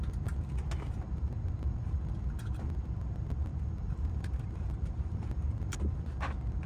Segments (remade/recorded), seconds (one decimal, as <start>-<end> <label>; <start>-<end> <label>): 0.0-3.5 recorded; 3.5-5.7 remade; 5.7-6.7 recorded